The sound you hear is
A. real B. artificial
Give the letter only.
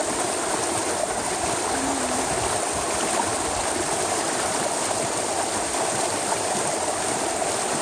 A